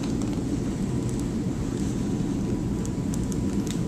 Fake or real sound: real